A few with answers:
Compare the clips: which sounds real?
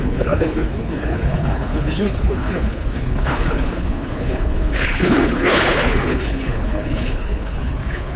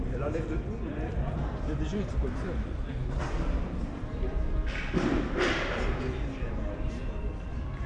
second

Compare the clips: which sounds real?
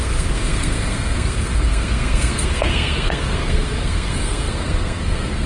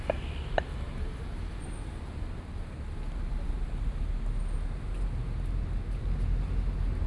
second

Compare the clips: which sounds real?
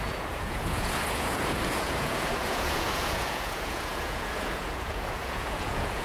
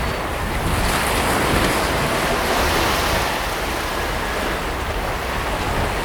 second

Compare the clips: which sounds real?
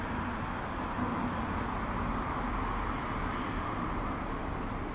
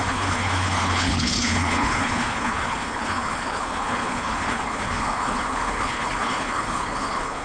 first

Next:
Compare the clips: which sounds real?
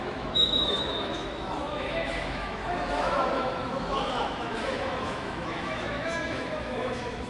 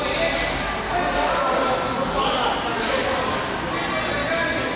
second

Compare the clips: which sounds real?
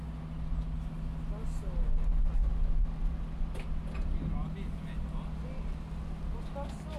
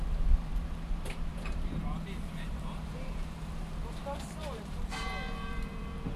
first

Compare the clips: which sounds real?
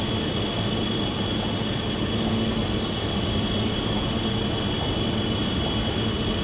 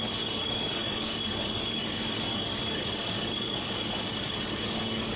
first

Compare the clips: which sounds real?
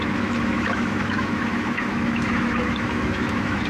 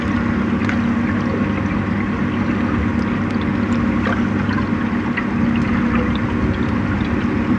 second